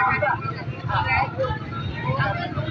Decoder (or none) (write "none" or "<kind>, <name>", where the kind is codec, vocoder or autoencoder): none